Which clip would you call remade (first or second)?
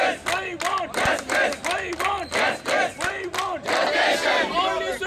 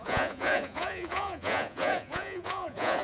second